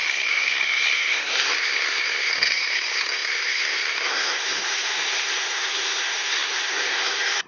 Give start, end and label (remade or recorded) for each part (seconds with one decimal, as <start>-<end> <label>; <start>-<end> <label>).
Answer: 0.0-7.5 remade